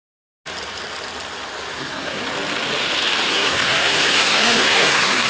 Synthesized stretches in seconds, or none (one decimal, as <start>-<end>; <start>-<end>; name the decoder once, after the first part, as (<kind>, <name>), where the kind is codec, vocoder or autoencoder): 1.7-2.2 (codec, SNAC); 3.3-5.3

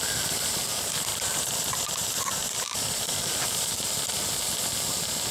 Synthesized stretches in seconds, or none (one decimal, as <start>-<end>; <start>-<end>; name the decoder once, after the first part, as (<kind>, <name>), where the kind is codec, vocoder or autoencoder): 1.1-3.2 (vocoder, BigVGAN v2)

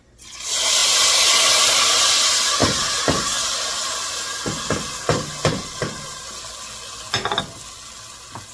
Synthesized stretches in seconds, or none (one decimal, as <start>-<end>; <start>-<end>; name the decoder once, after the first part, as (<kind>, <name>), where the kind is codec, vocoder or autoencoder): none